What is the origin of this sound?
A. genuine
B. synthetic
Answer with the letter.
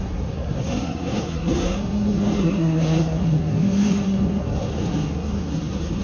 B